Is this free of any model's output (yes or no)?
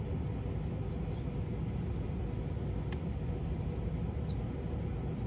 yes